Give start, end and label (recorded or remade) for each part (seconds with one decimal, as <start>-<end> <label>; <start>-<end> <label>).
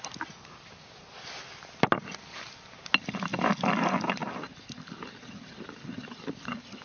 0.0-6.8 recorded